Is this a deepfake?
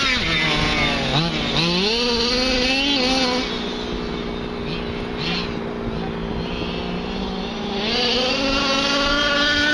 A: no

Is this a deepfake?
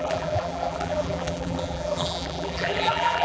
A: yes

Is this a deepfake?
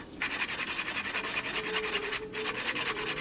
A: no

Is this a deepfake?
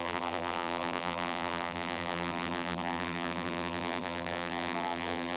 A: yes